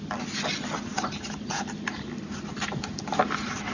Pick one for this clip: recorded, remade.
recorded